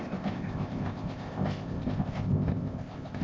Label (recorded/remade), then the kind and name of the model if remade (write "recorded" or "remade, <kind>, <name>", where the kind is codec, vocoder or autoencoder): remade, codec, ZipCodec